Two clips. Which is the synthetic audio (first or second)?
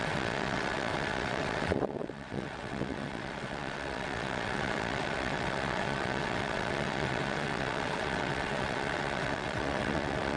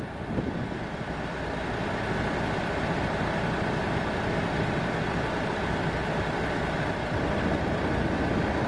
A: first